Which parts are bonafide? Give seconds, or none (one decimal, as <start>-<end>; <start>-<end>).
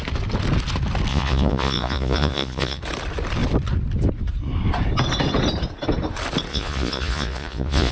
0.0-1.1; 2.8-6.5